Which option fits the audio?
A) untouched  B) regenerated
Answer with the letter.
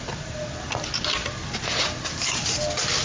A